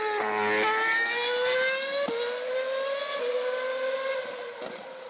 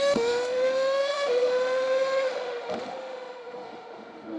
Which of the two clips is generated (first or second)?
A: second